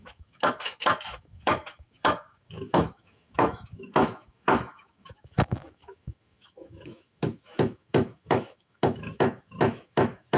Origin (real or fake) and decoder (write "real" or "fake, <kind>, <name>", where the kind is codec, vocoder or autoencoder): fake, autoencoder, DAC-VAE